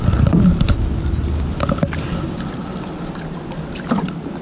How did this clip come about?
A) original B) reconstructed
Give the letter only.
A